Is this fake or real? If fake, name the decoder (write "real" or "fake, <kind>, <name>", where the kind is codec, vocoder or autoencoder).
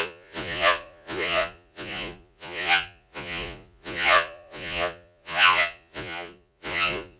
fake, vocoder, Vocos